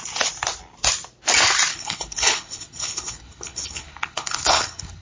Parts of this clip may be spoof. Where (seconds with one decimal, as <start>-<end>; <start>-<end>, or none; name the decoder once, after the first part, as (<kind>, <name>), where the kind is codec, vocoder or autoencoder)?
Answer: 1.7-5.0 (codec, HILCodec)